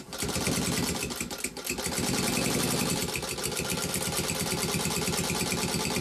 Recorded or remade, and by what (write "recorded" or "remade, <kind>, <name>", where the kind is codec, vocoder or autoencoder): recorded